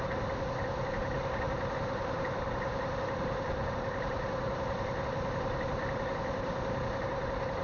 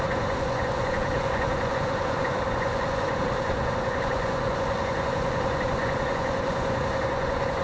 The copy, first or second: second